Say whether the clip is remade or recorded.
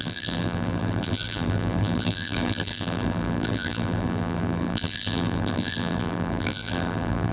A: remade